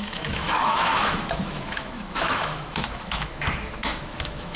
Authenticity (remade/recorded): remade